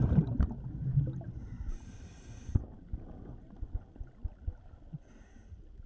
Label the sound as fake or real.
real